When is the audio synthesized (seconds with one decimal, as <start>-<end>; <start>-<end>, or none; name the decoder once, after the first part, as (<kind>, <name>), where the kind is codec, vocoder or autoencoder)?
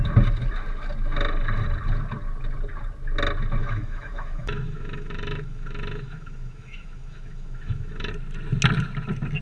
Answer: 3.6-8.1 (autoencoder, DAC-VAE)